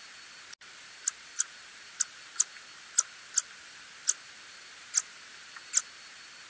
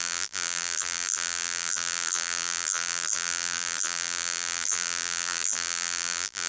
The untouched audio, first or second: first